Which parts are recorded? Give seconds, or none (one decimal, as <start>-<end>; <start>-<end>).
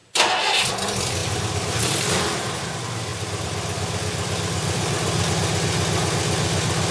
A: 0.0-1.2; 2.4-3.1; 5.3-6.9